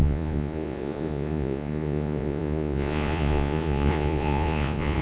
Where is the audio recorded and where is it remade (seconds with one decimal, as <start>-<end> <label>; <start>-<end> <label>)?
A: 0.0-5.0 remade